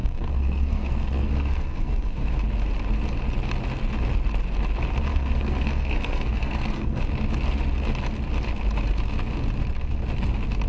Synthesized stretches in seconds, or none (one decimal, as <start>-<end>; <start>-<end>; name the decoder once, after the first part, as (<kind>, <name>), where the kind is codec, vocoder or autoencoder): 0.0-2.3 (codec, SNAC); 5.1-7.0